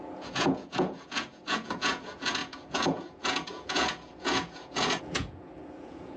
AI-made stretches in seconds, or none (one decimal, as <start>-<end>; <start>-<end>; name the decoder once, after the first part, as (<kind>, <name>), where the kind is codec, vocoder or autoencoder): 0.0-6.2 (vocoder, Vocos)